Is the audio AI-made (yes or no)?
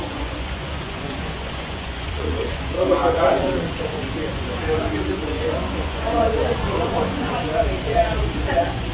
yes